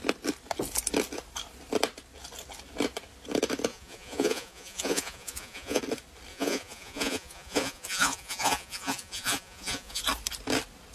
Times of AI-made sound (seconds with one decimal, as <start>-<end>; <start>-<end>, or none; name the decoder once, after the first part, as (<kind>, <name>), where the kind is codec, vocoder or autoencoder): 3.7-5.8 (vocoder, Vocos); 6.3-10.0